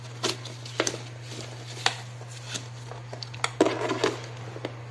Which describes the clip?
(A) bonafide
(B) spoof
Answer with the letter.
A